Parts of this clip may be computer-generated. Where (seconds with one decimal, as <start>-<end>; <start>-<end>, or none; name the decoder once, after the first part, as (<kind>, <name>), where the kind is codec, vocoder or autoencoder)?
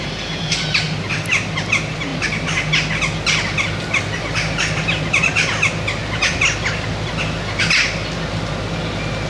none